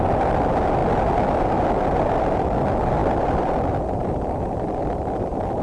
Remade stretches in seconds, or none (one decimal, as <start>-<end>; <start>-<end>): 3.0-5.6